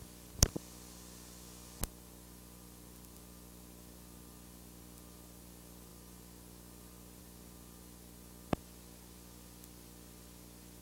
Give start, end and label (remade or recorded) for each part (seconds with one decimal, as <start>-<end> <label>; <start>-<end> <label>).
0.0-10.8 recorded